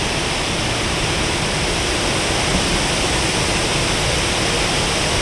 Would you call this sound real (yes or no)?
yes